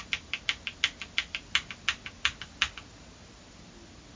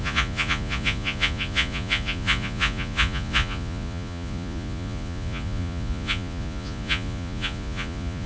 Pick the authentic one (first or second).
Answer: first